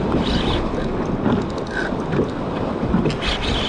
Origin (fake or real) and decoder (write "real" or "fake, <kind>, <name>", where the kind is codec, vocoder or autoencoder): real